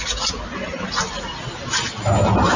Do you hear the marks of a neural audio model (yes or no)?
no